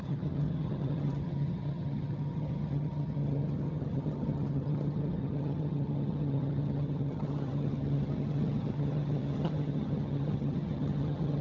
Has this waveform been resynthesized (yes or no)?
yes